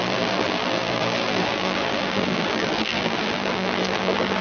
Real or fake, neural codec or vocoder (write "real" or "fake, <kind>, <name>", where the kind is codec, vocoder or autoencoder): fake, vocoder, BigVGAN v2